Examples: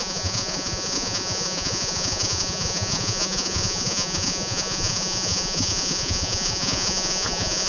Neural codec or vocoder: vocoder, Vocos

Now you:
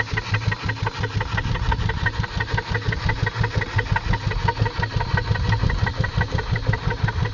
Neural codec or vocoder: none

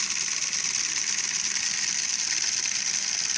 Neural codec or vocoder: none